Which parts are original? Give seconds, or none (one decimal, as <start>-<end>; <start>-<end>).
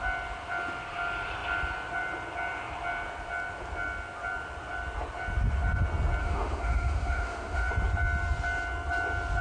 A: 0.0-6.2; 7.7-9.4